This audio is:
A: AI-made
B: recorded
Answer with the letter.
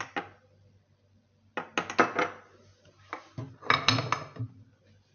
B